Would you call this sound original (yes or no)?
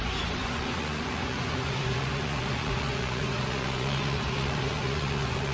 no